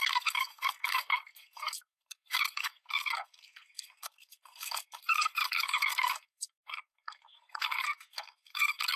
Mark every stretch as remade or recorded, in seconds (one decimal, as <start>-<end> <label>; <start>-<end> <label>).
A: 0.0-9.0 remade